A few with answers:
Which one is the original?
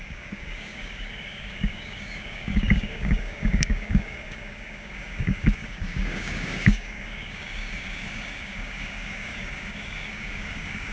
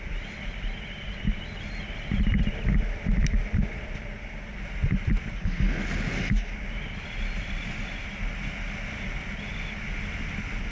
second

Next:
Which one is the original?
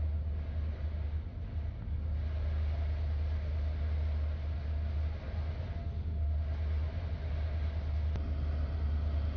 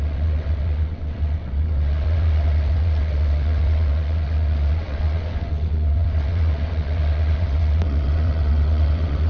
first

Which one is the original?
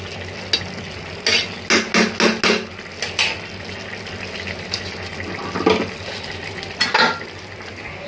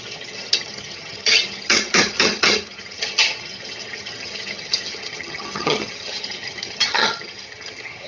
first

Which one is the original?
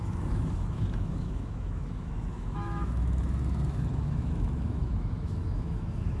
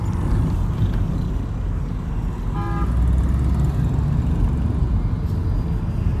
second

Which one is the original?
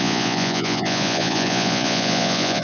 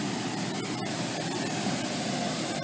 second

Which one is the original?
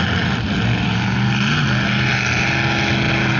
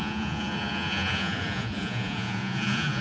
first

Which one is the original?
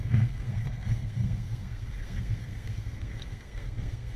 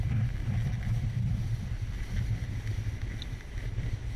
second